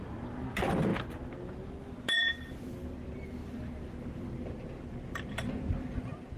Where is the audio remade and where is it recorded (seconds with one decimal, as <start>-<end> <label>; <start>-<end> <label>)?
0.0-3.4 recorded; 3.4-6.4 remade